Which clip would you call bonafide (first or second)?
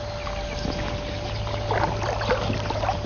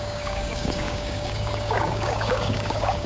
first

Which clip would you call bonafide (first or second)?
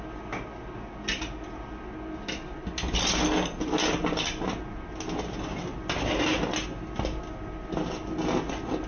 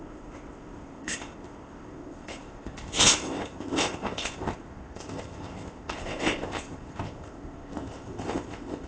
first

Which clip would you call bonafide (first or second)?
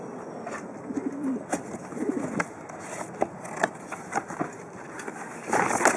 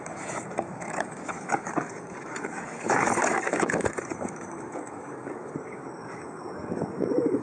first